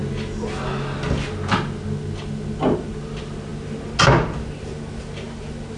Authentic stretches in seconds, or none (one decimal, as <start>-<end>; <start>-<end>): 0.0-5.8